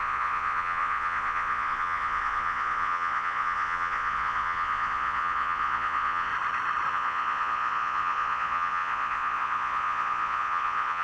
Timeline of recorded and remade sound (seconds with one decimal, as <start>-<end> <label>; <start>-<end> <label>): 0.0-6.3 remade; 6.3-6.9 recorded; 6.9-11.0 remade

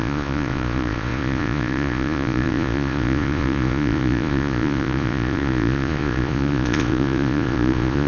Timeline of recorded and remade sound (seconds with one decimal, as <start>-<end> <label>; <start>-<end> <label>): 0.0-8.1 remade

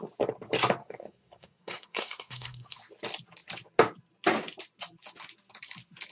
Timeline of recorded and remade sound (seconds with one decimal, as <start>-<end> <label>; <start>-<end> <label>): 0.0-0.8 recorded; 0.8-2.8 remade; 2.8-6.1 recorded

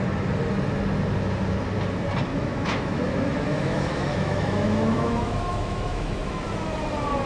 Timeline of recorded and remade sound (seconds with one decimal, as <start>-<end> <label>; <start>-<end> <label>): 0.0-2.3 recorded; 2.3-6.3 remade; 6.3-7.3 recorded

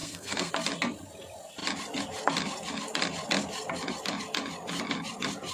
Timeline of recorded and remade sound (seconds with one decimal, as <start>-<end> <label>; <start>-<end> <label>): 0.0-0.5 remade; 0.5-5.5 recorded

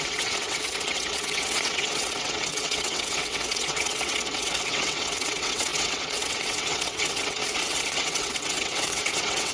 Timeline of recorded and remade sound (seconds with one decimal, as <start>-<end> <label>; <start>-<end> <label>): 0.0-9.5 remade